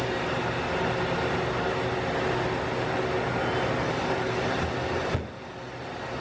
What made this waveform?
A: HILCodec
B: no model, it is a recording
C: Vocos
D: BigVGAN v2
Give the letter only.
B